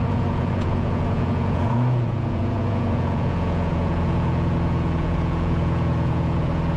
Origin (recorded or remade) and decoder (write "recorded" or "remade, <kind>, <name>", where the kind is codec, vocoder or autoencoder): remade, vocoder, Vocos